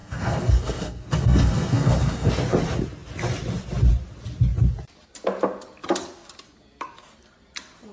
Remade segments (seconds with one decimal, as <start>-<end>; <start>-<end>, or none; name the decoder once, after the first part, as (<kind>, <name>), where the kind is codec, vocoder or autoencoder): 0.0-2.3 (codec, SNAC)